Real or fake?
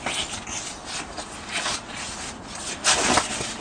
real